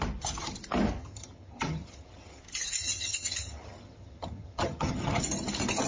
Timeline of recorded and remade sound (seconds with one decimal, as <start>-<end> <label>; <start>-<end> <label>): 0.0-1.0 recorded; 1.0-2.4 remade; 2.4-2.8 recorded; 2.8-5.2 remade; 5.2-5.9 recorded